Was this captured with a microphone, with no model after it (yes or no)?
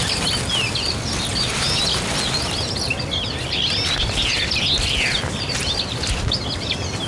yes